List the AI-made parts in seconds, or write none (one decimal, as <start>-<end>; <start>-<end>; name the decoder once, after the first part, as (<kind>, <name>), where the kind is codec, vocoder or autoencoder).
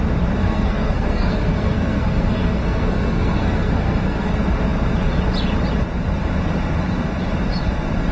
0.4-4.3 (codec, SNAC)